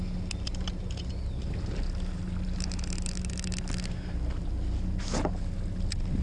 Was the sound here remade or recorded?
recorded